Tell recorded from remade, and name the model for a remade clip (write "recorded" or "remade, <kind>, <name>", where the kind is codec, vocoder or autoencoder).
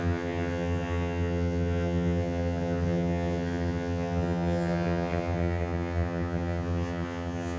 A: remade, vocoder, HiFi-GAN